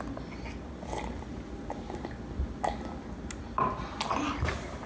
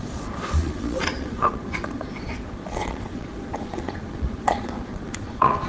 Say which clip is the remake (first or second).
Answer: second